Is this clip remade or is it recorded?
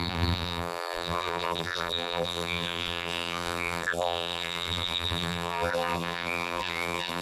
remade